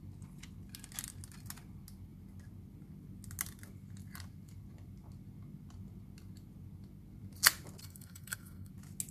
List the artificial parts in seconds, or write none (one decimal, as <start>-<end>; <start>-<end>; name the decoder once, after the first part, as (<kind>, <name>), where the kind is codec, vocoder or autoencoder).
7.8-8.7 (codec, SNAC)